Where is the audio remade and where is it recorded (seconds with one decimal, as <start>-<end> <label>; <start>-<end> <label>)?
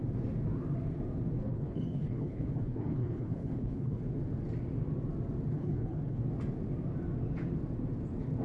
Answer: 0.0-1.4 recorded; 1.4-4.0 remade; 4.0-5.5 recorded; 5.5-6.2 remade; 6.2-8.4 recorded